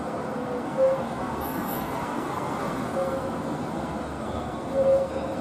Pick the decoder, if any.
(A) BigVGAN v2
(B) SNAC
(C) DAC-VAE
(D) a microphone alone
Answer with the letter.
B